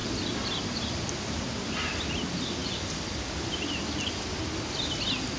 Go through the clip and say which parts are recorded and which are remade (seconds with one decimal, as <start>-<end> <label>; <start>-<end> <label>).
0.0-2.0 remade; 2.0-2.6 recorded; 2.6-3.8 remade; 3.8-5.4 recorded